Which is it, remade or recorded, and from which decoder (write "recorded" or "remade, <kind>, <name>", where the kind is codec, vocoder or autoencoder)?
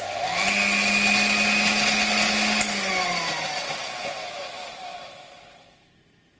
recorded